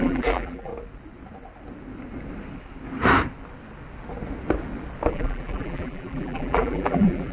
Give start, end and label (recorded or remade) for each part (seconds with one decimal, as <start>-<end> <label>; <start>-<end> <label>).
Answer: 0.0-0.7 remade; 0.7-5.1 recorded; 5.1-7.3 remade